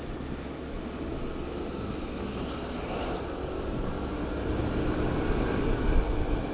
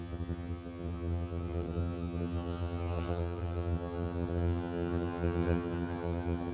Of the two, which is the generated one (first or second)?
second